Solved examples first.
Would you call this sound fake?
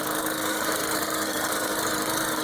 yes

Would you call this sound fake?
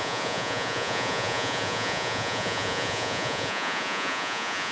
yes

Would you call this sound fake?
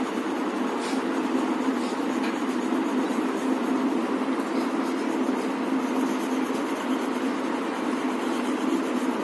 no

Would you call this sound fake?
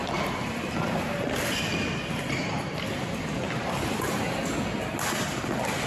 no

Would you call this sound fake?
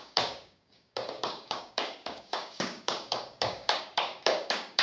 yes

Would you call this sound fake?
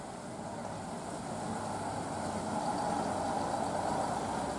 no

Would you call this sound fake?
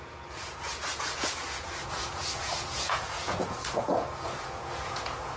yes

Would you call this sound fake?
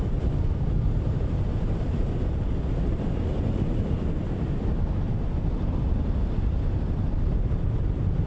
no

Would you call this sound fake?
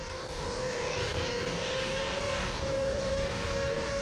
yes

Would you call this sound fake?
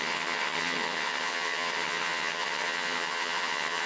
yes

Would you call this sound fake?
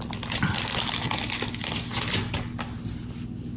no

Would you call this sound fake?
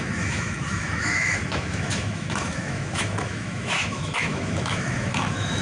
yes